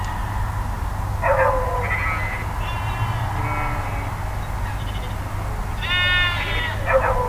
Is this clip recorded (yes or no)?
yes